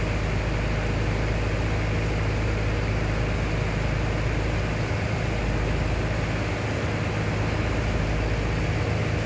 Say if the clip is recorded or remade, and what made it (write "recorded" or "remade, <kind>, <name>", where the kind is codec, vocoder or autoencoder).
recorded